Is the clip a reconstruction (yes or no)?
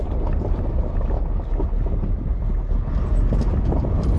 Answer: no